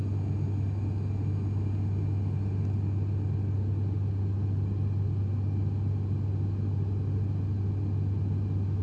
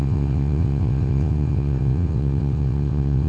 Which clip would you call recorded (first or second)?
first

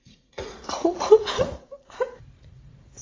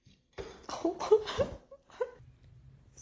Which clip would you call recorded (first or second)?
second